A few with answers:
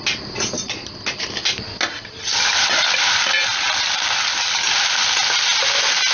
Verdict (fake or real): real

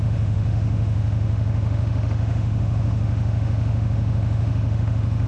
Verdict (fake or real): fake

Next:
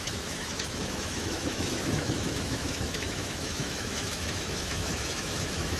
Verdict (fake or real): fake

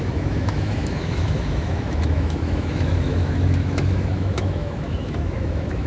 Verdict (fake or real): fake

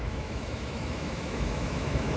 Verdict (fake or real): fake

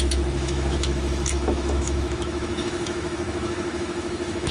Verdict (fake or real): fake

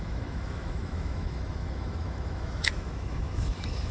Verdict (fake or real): fake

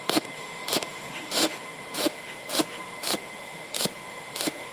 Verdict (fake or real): fake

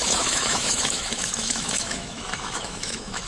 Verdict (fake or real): fake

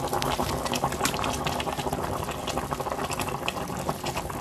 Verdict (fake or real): real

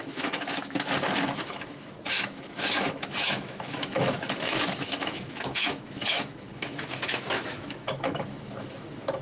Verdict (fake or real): fake